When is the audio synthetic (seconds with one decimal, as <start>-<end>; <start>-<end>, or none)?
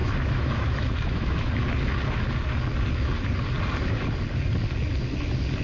0.0-1.5